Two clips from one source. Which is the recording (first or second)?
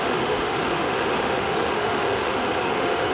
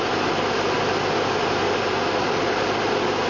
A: second